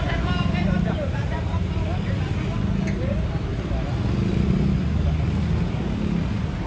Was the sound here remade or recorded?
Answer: recorded